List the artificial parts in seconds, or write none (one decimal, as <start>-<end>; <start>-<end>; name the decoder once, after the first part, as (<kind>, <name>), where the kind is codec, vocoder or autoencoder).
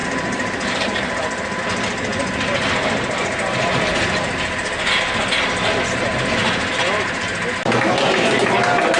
none